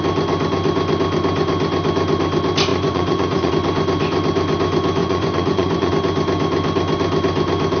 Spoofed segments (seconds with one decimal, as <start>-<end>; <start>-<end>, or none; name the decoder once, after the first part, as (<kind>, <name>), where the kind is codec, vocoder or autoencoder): 2.7-3.5 (vocoder, Vocos); 5.0-5.9